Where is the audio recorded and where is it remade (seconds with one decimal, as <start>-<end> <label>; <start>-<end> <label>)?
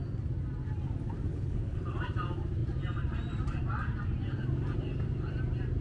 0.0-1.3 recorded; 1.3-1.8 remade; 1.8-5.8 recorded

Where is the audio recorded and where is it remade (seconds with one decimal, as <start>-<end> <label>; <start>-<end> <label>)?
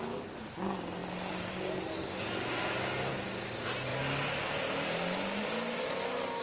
0.0-6.4 recorded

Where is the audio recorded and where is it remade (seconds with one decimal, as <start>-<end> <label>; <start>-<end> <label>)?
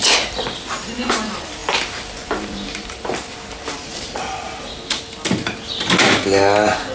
0.0-1.6 recorded; 1.6-4.2 remade; 4.2-6.9 recorded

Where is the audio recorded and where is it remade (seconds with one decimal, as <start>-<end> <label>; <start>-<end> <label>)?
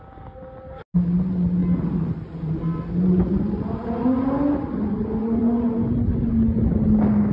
0.0-7.3 recorded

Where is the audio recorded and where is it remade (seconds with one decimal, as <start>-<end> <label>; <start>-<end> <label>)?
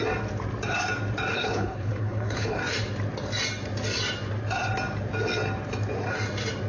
0.0-1.3 recorded; 1.3-2.6 remade; 2.6-6.7 recorded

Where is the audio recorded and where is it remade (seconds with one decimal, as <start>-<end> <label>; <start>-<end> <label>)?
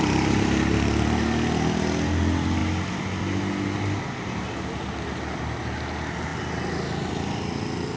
0.0-8.0 recorded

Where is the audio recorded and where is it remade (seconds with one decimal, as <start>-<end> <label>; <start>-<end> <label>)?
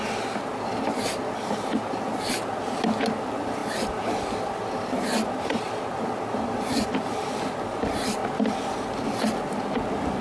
0.0-10.2 recorded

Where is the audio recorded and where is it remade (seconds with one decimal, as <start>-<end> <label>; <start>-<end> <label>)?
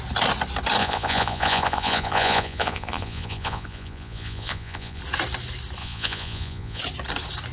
0.0-0.8 recorded; 0.8-5.0 remade; 5.0-5.8 recorded; 5.8-6.8 remade; 6.8-7.5 recorded